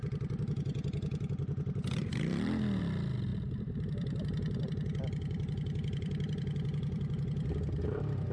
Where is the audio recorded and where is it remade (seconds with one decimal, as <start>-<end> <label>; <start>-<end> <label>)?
0.0-2.0 recorded; 2.0-2.8 remade; 2.8-3.3 recorded; 3.3-8.3 remade